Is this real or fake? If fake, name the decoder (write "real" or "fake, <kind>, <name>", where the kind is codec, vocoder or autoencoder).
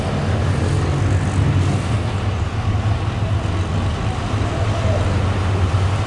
real